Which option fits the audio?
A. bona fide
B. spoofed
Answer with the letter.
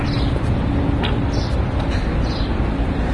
A